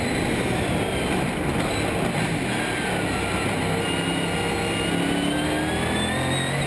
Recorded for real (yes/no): yes